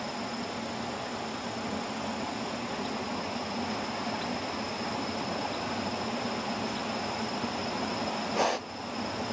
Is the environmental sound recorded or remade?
recorded